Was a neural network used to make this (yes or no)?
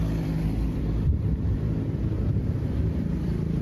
yes